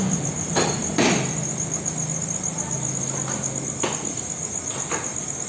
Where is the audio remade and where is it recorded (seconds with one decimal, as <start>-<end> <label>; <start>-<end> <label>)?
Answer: 0.0-5.5 recorded